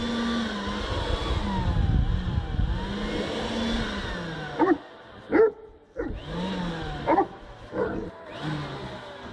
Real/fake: real